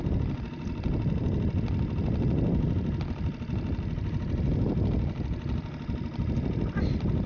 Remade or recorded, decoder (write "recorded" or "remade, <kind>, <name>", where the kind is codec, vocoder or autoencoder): recorded